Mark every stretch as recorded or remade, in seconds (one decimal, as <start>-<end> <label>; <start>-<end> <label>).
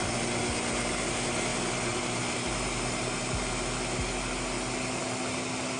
0.0-5.8 recorded